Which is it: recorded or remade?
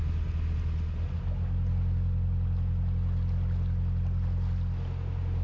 recorded